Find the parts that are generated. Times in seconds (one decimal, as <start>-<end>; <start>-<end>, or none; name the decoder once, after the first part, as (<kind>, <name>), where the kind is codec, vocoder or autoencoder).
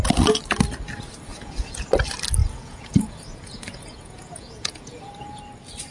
1.3-1.9 (vocoder, Vocos); 2.4-5.4